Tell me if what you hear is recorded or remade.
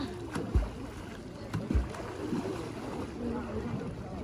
recorded